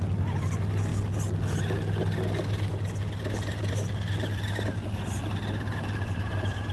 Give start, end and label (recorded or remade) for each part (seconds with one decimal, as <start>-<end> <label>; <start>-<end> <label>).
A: 0.0-6.7 recorded

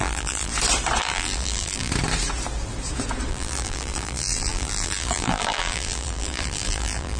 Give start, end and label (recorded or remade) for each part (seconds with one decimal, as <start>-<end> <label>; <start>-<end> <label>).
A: 0.0-0.5 remade; 0.5-1.0 recorded; 1.0-1.9 remade; 1.9-3.3 recorded; 3.3-7.2 remade